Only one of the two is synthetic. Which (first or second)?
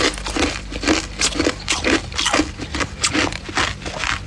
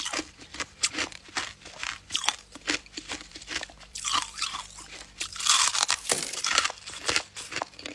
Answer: second